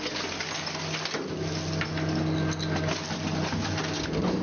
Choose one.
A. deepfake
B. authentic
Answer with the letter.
B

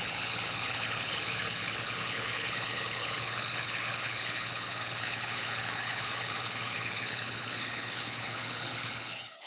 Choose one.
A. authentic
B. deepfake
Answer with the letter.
B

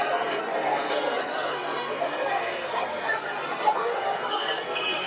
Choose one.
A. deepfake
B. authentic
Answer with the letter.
A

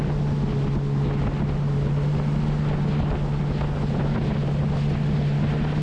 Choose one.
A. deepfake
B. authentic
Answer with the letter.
B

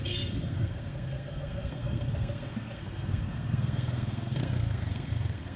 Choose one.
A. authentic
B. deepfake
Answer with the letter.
B